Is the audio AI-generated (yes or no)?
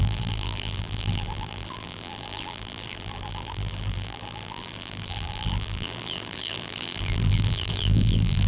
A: yes